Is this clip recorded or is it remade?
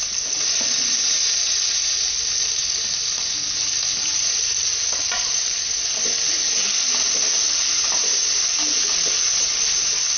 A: recorded